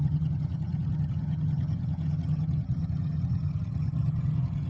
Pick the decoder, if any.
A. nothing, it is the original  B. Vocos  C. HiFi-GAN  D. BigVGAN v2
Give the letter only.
C